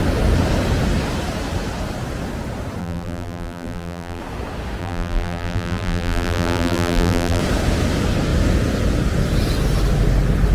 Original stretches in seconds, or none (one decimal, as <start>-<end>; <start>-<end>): 0.0-2.8; 4.2-4.8; 7.4-10.5